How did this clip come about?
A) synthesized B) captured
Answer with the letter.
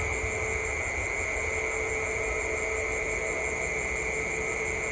B